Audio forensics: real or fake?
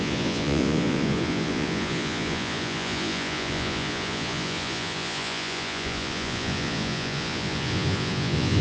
fake